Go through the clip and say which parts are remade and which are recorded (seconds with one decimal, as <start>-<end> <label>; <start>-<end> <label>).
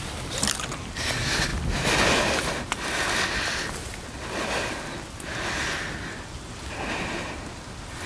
0.0-8.1 recorded